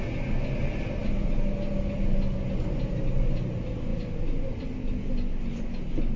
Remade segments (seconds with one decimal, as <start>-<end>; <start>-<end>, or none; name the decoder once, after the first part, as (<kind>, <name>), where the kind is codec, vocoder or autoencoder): none

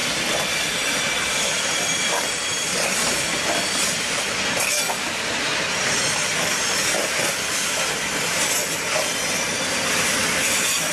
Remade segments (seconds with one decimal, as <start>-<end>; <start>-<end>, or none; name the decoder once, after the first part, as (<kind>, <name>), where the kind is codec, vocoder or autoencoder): none

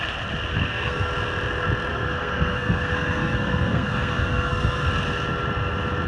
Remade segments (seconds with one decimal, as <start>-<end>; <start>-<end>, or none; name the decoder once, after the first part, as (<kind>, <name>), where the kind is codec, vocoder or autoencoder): 0.5-1.1 (codec, SNAC); 1.9-4.9

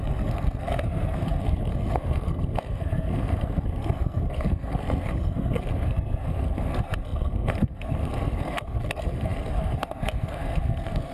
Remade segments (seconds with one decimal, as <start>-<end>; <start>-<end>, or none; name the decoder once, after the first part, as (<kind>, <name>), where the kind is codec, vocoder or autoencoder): 0.0-11.1 (codec, SNAC)

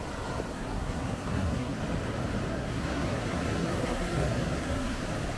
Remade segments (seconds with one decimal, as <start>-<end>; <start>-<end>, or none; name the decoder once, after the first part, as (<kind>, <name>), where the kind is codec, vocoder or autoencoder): 0.5-1.8 (codec, SNAC); 2.5-5.0